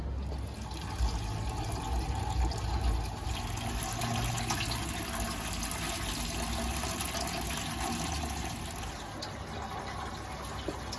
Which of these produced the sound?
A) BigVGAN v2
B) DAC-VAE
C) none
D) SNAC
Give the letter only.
C